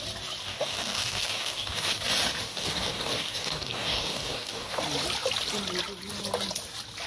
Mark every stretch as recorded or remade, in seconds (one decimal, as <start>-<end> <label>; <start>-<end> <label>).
0.0-0.4 recorded; 0.4-2.0 remade; 2.0-2.5 recorded; 2.5-4.8 remade; 4.8-7.1 recorded